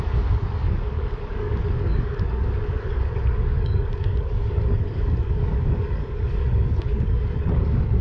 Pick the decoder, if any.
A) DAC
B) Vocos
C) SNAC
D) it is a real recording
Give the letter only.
A